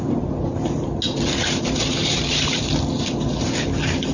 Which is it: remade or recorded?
recorded